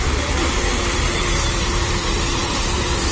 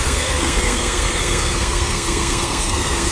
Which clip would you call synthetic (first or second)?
second